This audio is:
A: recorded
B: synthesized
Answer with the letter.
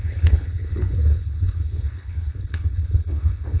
B